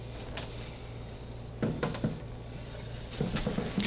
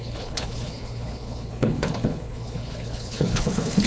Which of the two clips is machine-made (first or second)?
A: second